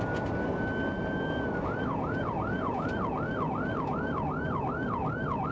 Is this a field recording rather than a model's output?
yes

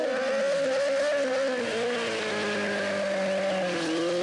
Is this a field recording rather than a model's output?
yes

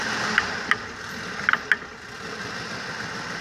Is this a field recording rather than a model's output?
yes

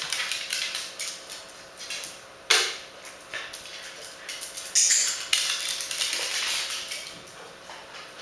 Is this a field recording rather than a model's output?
yes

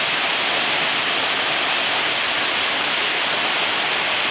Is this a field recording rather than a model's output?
yes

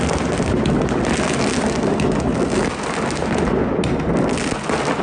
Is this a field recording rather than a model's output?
yes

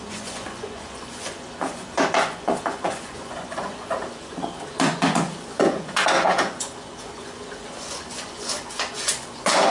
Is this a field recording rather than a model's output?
no